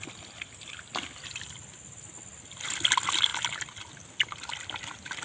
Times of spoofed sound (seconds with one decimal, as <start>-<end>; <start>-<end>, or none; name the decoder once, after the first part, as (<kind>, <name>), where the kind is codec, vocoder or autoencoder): none